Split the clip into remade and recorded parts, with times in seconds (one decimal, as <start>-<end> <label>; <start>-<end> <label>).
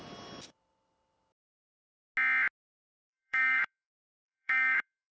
0.0-2.8 recorded; 2.8-5.2 remade